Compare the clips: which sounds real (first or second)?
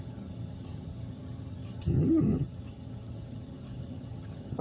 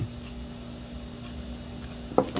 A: second